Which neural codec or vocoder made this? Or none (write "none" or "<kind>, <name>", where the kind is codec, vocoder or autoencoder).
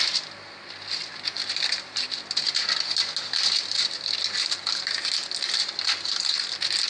none